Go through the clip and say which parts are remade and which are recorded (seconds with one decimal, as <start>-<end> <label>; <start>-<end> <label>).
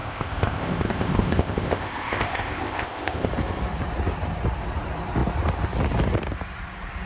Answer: 0.0-3.3 remade; 3.3-7.1 recorded